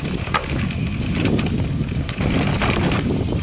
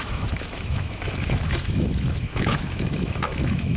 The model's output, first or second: second